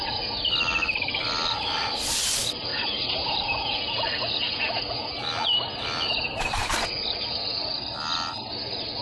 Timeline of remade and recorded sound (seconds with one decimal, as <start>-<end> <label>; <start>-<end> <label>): 0.0-9.0 recorded